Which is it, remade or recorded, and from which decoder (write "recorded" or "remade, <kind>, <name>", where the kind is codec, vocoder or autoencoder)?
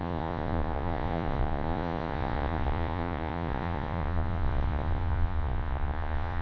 remade, vocoder, Vocos